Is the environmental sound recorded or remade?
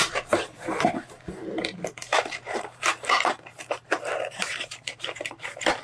remade